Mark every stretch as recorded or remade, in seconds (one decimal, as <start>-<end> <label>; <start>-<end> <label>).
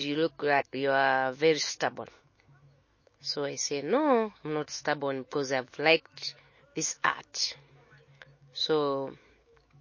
0.0-0.6 recorded; 0.6-9.8 remade